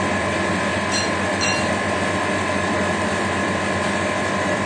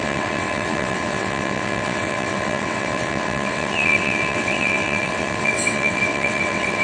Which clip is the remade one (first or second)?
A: second